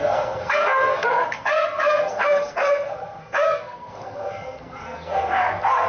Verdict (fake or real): fake